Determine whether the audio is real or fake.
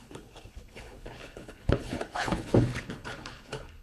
fake